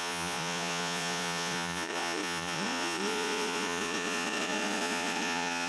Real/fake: fake